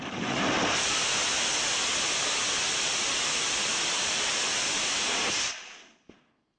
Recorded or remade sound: remade